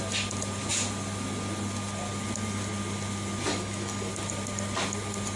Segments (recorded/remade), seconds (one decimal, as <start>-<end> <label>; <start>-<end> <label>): 0.0-3.5 recorded; 3.5-4.1 remade; 4.1-5.4 recorded